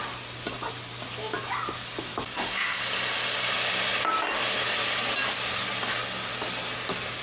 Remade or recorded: recorded